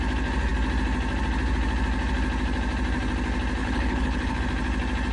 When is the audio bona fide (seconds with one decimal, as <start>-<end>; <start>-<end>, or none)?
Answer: 0.0-3.6; 4.4-5.1